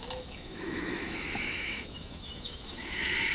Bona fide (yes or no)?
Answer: no